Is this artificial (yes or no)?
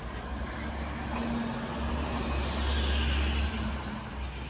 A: no